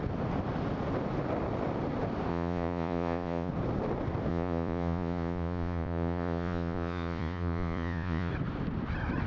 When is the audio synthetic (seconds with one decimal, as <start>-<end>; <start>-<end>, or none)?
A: 2.3-3.5; 4.3-8.3